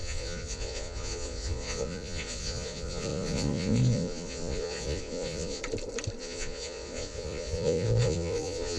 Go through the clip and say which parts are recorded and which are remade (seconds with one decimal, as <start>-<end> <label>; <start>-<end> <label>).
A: 0.0-5.6 remade; 5.6-6.2 recorded; 6.2-8.8 remade